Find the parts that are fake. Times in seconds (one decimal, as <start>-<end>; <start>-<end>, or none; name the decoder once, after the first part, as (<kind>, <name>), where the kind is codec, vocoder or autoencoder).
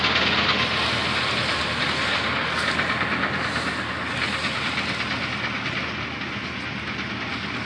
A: none